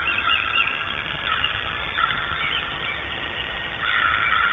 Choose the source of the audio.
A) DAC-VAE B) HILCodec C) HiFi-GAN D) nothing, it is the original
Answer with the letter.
C